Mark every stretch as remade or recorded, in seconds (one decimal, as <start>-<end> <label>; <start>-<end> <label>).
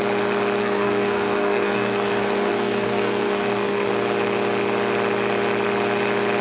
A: 0.0-0.6 recorded; 0.6-3.9 remade; 3.9-6.4 recorded